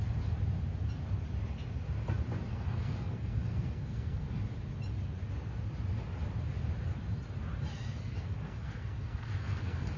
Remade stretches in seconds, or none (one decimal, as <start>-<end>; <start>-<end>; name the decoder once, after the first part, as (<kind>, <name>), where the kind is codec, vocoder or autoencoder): 2.5-4.4 (codec, SNAC); 7.7-10.0